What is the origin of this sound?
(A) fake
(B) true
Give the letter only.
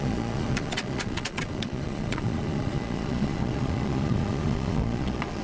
A